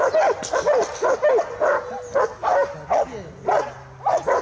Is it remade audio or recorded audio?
recorded